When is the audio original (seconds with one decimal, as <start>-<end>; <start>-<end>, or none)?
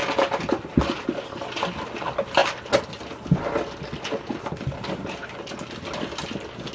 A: 0.0-6.7